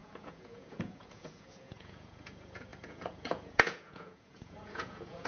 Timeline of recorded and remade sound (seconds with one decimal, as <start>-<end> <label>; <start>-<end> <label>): 0.0-5.3 remade